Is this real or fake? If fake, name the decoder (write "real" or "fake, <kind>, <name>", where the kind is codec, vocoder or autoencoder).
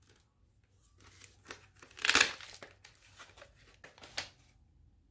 real